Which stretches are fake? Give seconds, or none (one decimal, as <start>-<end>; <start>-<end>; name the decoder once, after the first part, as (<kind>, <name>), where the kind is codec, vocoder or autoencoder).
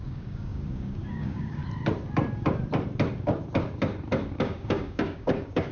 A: 0.0-1.6 (codec, DAC); 4.3-5.7